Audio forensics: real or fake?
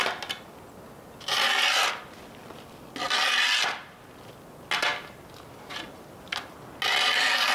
real